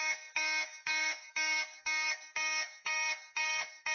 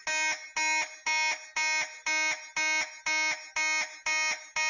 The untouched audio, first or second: second